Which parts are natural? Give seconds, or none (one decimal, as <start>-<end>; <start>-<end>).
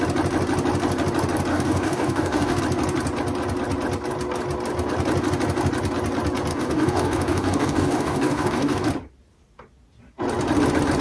0.0-1.5; 2.6-6.5; 8.9-11.0